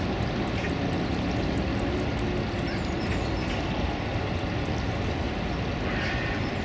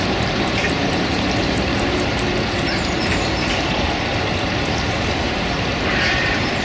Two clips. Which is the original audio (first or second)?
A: first